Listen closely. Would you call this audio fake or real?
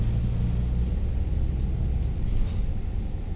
real